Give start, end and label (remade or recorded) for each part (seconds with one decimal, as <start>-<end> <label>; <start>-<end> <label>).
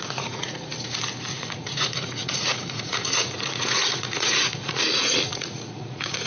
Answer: 0.0-0.7 remade; 0.7-1.3 recorded; 1.3-6.3 remade